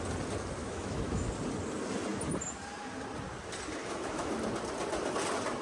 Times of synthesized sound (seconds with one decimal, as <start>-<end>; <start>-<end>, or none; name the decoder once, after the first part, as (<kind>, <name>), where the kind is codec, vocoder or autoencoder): 0.6-1.3 (autoencoder, DAC-VAE); 3.8-4.3